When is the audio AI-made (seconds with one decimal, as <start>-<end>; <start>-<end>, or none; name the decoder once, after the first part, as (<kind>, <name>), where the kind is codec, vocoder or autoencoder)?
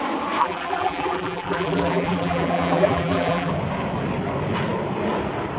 0.4-3.5 (vocoder, BigVGAN v2)